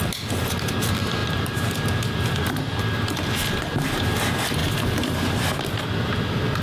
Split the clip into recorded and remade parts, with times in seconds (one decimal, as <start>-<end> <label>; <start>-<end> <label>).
0.0-1.2 recorded; 1.2-2.4 remade; 2.4-6.6 recorded